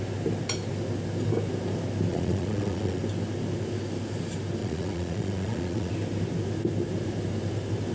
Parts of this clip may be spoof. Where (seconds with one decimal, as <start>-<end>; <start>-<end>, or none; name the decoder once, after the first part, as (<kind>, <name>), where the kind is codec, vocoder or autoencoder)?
2.1-3.0 (vocoder, Vocos); 4.6-5.9